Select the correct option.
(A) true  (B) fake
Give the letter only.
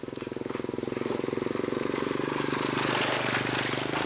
A